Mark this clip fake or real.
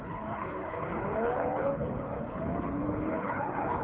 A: fake